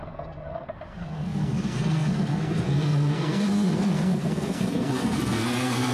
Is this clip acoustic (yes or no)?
no